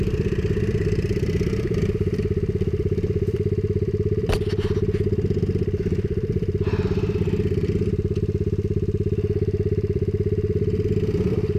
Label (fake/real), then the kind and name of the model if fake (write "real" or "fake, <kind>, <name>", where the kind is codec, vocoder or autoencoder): fake, vocoder, BigVGAN v2